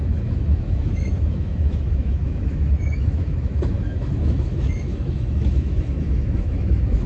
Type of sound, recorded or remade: remade